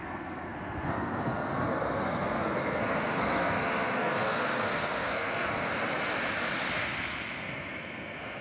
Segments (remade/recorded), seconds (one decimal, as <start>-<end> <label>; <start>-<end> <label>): 0.0-5.7 remade; 5.7-6.7 recorded; 6.7-8.4 remade